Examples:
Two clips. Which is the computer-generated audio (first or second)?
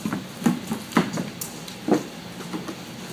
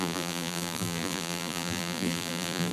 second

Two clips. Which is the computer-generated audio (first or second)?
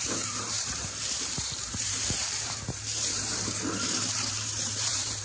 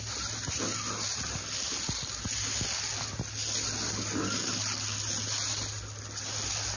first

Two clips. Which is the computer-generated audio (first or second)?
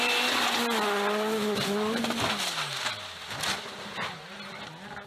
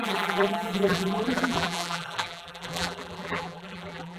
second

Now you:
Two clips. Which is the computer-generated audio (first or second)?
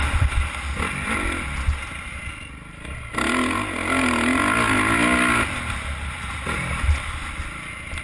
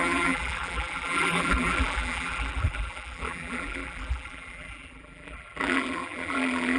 second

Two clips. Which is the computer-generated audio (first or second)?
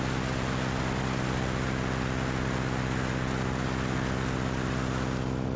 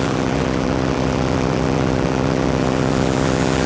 second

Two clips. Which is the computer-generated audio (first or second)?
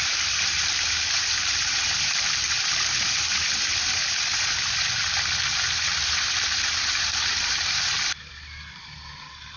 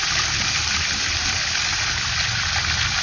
first